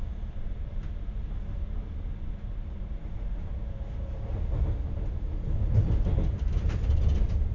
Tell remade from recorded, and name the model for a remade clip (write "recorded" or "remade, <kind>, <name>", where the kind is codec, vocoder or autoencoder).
recorded